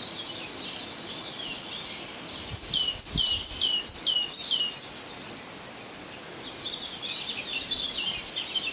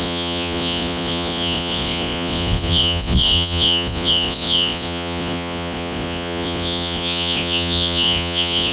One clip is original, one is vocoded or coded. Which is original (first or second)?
first